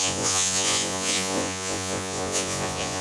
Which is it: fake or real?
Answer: fake